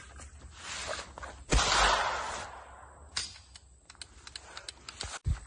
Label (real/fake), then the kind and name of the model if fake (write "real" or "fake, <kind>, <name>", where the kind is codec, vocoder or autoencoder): real